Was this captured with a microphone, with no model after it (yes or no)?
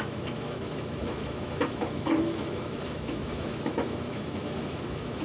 no